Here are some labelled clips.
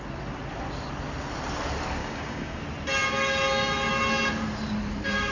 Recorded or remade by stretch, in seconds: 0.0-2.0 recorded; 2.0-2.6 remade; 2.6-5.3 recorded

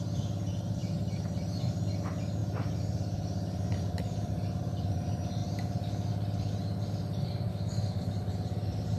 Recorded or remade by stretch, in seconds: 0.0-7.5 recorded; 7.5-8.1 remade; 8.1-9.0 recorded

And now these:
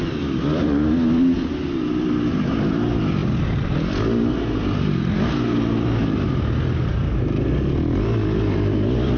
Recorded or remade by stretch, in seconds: 0.0-9.2 recorded

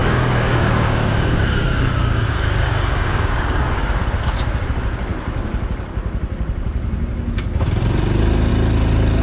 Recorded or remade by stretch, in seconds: 0.0-4.0 remade; 4.0-9.2 recorded

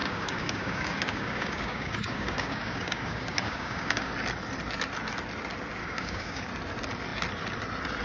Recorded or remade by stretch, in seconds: 0.0-4.1 remade; 4.1-5.8 recorded; 5.8-6.5 remade; 6.5-8.0 recorded